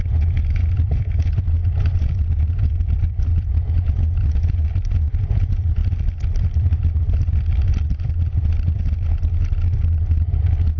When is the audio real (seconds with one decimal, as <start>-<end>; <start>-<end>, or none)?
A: 5.8-10.8